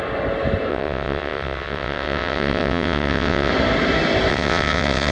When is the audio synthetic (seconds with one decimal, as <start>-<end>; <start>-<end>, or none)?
0.7-3.5; 4.3-5.1